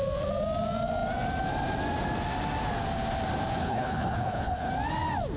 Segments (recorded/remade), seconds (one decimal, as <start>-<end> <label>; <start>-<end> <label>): 0.0-3.6 recorded; 3.6-4.7 remade; 4.7-5.4 recorded